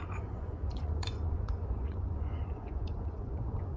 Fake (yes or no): yes